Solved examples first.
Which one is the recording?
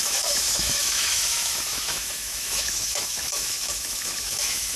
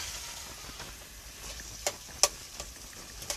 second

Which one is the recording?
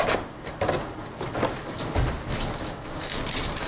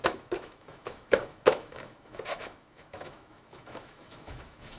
first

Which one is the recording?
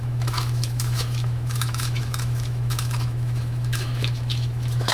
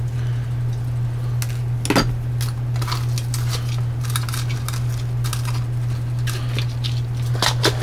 second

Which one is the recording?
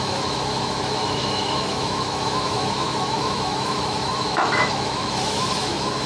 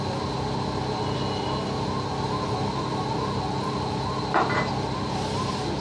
second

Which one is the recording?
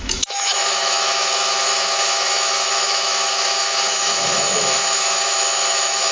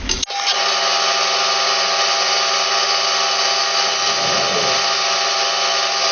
second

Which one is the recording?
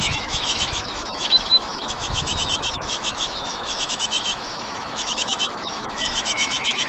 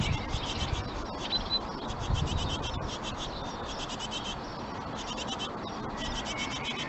second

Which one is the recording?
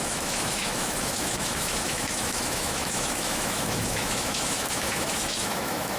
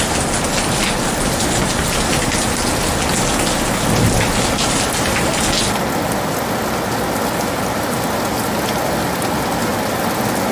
second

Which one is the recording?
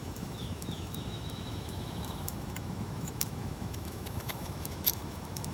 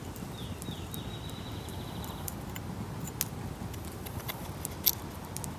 second